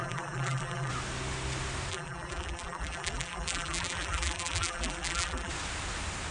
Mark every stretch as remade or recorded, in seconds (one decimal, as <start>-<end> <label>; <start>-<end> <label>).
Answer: 0.0-0.9 remade; 0.9-1.9 recorded; 1.9-5.5 remade; 5.5-6.3 recorded